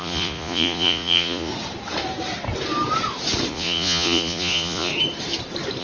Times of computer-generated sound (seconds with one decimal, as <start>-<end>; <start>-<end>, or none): 0.0-1.5; 3.5-4.9